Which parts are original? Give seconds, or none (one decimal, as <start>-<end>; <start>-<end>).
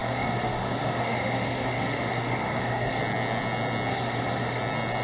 3.0-3.9; 4.6-5.0